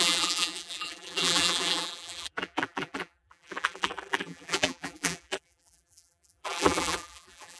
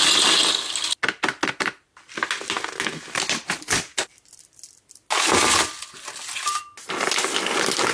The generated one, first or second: first